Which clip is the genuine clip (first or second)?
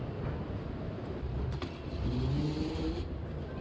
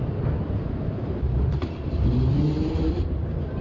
first